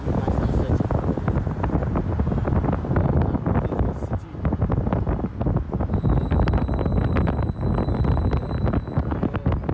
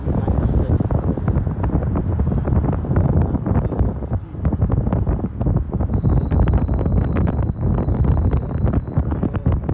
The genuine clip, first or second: first